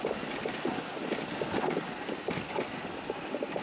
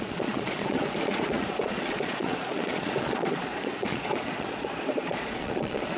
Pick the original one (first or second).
first